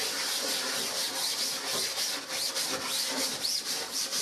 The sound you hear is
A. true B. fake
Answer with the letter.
B